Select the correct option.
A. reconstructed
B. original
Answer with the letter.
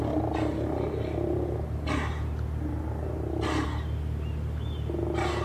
B